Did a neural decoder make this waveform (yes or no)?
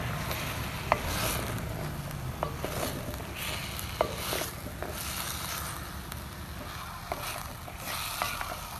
no